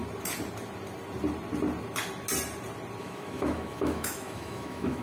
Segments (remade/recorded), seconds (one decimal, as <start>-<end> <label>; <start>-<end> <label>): 0.0-3.0 recorded; 3.0-5.0 remade